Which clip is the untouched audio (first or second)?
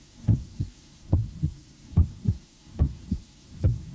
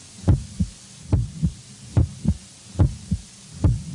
second